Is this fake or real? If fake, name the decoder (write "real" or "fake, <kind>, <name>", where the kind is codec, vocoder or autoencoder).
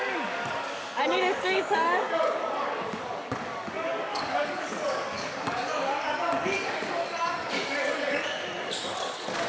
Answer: fake, codec, DAC